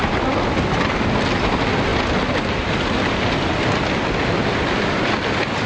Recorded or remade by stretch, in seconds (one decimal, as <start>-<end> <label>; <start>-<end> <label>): 0.0-5.7 recorded